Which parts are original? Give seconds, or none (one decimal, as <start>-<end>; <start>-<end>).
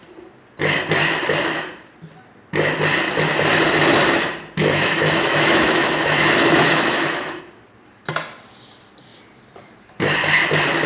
0.0-4.6; 7.4-10.9